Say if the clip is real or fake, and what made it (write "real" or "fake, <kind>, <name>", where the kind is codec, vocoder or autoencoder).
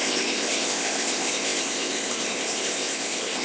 fake, codec, ZipCodec